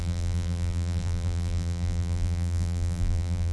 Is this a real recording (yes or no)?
no